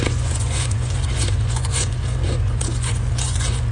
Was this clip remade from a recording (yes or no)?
yes